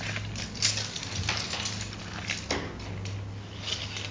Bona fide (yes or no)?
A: yes